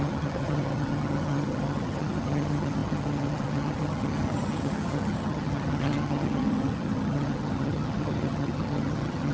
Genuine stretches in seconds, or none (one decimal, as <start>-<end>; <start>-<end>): none